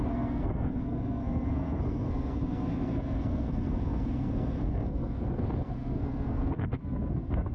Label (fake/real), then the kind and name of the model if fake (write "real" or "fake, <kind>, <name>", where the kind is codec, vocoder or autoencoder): fake, codec, SNAC